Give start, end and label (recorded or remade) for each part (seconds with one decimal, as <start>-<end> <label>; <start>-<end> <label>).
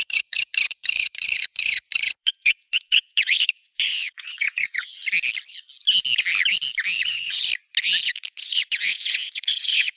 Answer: 0.0-5.0 remade; 5.0-7.0 recorded; 7.0-7.5 remade; 7.5-8.0 recorded; 8.0-10.0 remade